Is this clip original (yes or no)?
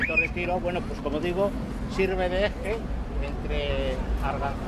yes